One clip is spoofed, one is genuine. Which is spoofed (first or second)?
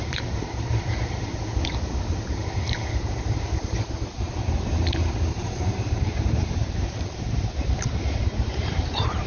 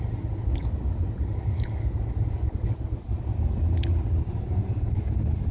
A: first